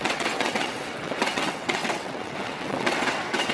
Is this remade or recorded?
remade